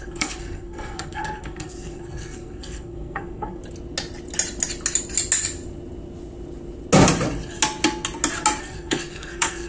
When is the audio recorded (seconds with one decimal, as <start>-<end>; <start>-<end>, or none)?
3.6-8.6